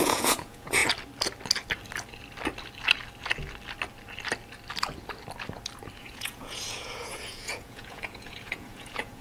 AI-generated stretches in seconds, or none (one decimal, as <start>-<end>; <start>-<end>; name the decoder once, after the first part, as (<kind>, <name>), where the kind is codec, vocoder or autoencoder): 0.0-0.8 (vocoder, Vocos); 6.0-9.2